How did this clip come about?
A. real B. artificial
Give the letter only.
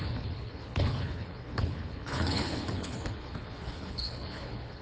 B